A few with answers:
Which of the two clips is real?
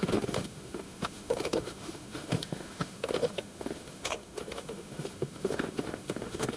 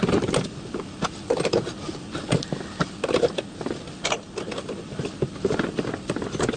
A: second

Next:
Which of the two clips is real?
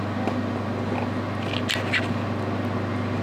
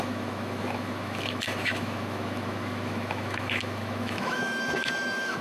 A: first